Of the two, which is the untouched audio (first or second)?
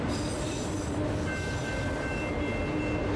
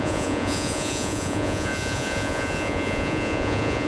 first